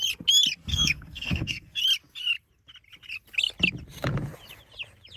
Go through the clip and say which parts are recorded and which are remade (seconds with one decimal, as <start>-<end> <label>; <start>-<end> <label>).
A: 0.0-0.7 recorded; 0.7-1.8 remade; 1.8-5.2 recorded